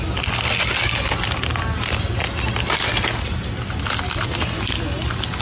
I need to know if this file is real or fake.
real